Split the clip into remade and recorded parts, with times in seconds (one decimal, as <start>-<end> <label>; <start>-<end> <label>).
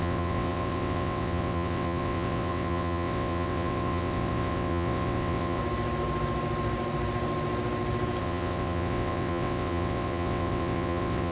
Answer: 0.0-5.6 remade; 5.6-8.2 recorded; 8.2-11.3 remade